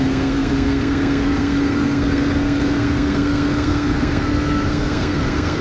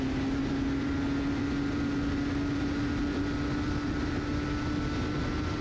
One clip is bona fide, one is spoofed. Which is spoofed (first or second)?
first